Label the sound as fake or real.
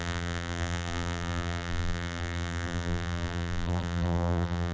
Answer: fake